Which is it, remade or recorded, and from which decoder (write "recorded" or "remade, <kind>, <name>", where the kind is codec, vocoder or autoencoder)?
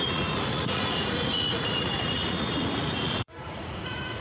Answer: remade, vocoder, Vocos